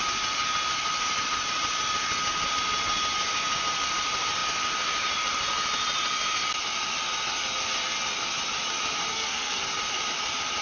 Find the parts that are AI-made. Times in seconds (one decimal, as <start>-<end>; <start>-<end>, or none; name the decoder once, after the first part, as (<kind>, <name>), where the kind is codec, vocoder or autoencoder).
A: 9.1-9.6 (codec, SNAC)